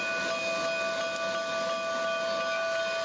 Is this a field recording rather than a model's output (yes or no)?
yes